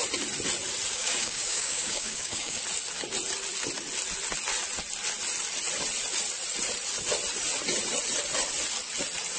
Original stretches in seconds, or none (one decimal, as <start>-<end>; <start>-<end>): 0.0-0.9; 2.6-9.4

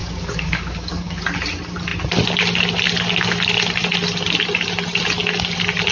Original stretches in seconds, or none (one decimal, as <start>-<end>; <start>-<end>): 1.2-5.9

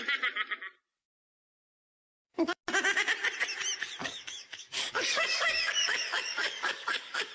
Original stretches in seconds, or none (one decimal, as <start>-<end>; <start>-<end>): 0.0-1.0; 2.6-4.0

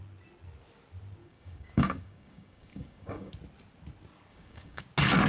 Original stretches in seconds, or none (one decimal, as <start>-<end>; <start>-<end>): 0.0-1.2; 3.3-4.3; 4.8-5.3

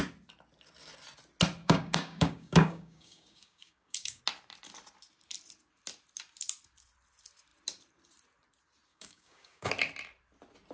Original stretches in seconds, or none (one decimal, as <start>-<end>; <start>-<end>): 0.0-1.6; 4.2-8.9; 9.7-10.7

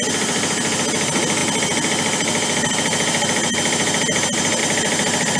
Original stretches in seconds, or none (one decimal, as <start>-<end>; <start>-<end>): 0.0-5.4

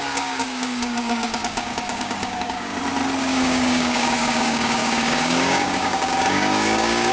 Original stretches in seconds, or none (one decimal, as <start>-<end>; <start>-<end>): 2.7-3.2